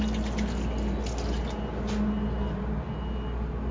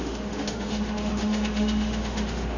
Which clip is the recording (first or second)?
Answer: first